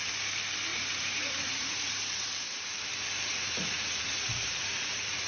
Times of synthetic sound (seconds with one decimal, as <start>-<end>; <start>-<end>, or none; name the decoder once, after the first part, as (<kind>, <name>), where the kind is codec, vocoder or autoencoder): 0.7-1.9 (vocoder, Vocos); 3.3-5.3

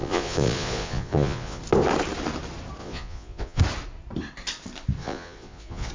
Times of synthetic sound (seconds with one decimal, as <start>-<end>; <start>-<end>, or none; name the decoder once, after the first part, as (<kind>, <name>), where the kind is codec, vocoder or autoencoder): 0.0-1.6 (vocoder, Vocos); 2.8-3.6; 5.0-5.9